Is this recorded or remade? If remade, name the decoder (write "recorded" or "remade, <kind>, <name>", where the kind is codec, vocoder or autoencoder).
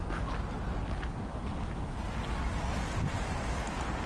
recorded